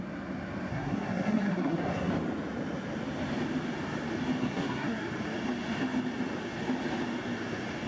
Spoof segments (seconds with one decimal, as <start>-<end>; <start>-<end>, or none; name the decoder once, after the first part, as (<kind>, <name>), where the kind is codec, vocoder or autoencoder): 0.7-2.1 (codec, SNAC); 4.4-5.1